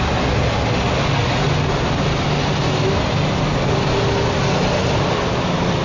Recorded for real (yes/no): yes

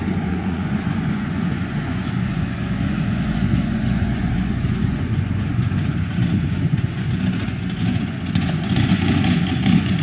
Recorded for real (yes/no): no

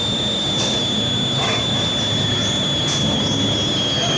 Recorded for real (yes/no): yes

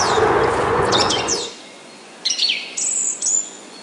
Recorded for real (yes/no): no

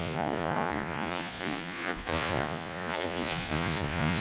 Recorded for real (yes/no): no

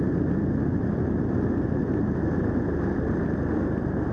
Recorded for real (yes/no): yes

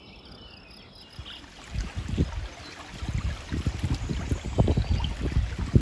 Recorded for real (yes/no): yes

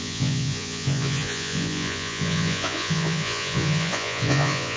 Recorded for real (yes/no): no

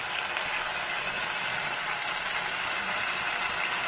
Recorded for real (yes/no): yes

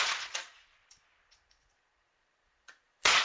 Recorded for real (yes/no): no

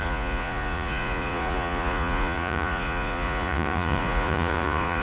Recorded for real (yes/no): no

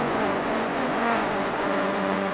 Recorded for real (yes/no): no